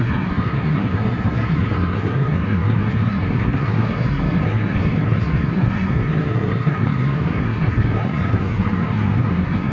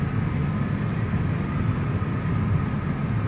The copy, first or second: first